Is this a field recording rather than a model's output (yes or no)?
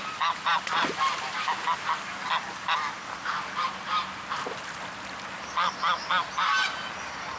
yes